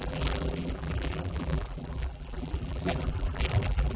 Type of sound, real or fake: fake